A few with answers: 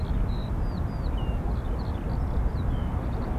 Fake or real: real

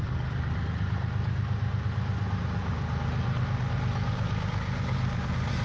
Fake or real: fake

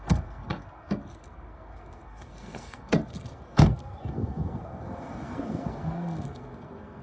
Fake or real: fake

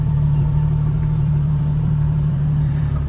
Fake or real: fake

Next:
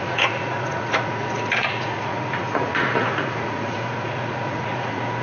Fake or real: fake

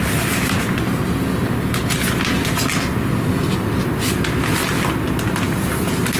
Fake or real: real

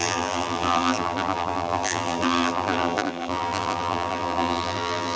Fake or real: fake